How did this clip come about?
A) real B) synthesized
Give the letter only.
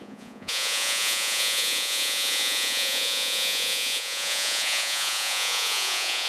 B